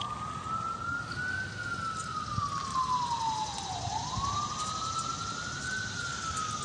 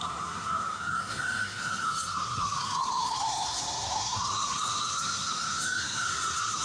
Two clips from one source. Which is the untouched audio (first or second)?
first